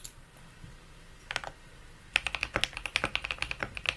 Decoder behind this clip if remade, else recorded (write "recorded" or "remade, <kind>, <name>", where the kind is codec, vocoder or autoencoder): recorded